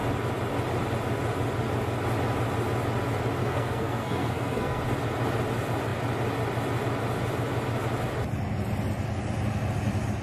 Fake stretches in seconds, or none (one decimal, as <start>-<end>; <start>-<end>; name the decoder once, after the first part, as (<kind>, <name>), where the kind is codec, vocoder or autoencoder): 3.4-4.8 (codec, SNAC)